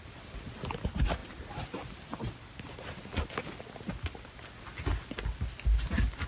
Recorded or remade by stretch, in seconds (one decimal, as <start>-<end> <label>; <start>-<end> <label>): 0.0-6.3 recorded